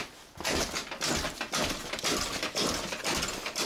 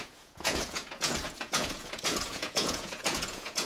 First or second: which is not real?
second